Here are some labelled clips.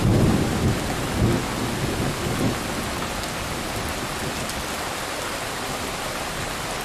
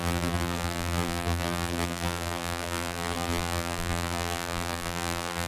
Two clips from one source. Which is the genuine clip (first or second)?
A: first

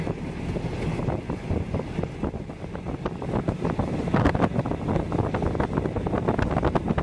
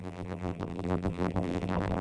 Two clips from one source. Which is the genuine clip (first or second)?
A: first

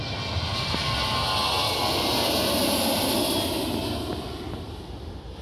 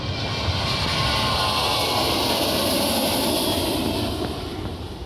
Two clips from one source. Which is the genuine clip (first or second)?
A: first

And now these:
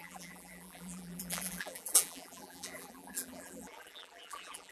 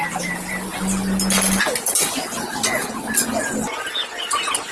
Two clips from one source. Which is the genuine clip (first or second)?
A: second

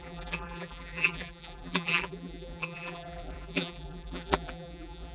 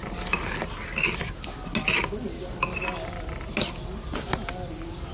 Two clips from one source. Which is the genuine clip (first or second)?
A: second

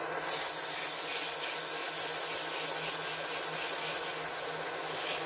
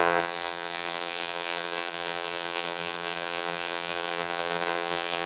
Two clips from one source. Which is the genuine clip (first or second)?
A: first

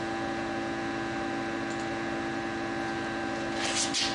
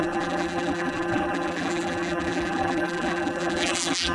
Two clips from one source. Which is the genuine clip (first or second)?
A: first